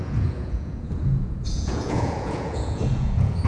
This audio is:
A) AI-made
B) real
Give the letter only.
A